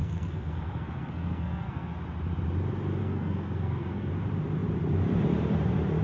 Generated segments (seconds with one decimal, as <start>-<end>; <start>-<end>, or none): 0.0-2.0; 3.0-4.1